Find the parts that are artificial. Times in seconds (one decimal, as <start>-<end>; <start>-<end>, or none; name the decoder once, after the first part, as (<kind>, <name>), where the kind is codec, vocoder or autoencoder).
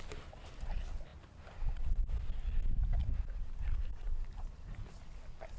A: none